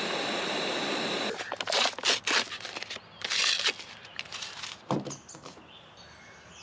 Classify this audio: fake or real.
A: real